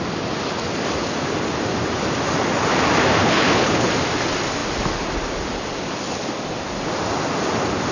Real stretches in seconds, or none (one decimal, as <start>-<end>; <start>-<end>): 0.0-3.2; 3.9-7.9